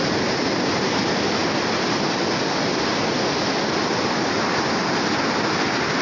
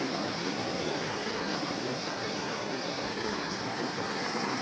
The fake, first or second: second